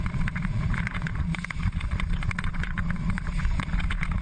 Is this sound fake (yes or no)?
yes